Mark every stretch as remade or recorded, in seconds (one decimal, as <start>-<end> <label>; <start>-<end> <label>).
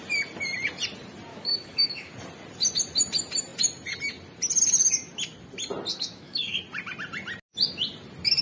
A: 0.0-1.3 recorded; 1.3-2.1 remade; 2.1-5.9 recorded; 5.9-6.6 remade; 6.6-8.4 recorded